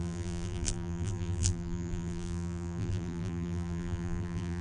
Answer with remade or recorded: remade